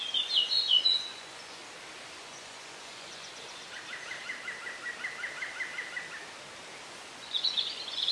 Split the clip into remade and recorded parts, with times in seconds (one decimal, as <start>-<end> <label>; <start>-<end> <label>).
0.0-1.6 remade; 1.6-2.2 recorded; 2.2-3.6 remade; 3.6-6.9 recorded; 6.9-8.1 remade